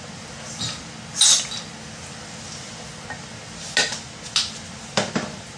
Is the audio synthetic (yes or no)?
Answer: no